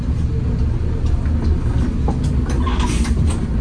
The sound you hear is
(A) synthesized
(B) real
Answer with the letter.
B